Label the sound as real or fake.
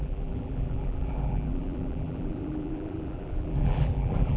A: fake